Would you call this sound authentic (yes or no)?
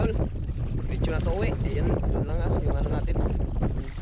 yes